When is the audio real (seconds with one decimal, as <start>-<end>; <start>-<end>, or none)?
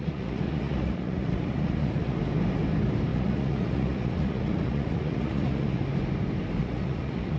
2.2-3.1; 5.8-6.6